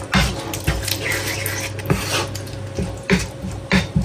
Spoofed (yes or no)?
no